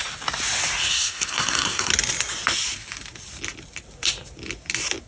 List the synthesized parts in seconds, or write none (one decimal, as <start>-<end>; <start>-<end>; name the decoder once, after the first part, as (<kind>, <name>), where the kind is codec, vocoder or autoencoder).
0.9-1.9 (codec, SNAC)